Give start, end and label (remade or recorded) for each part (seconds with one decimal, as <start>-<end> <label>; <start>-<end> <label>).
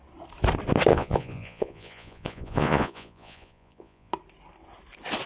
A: 0.0-0.9 recorded; 0.9-4.1 remade; 4.1-5.3 recorded